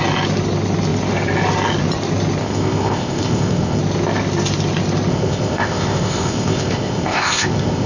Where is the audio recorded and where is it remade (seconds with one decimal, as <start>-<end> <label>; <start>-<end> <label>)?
0.0-2.4 recorded; 2.4-3.8 remade; 3.8-5.1 recorded; 5.1-7.9 remade